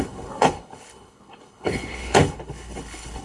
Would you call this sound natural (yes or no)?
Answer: no